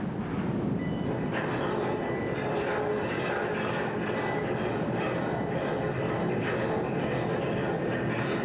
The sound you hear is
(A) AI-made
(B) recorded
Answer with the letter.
B